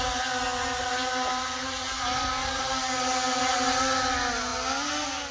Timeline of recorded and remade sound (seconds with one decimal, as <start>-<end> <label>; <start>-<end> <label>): 0.0-5.3 recorded